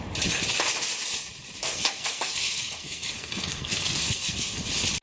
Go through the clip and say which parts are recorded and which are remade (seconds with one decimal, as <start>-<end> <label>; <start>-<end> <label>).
0.0-1.6 recorded; 1.6-4.6 remade; 4.6-5.0 recorded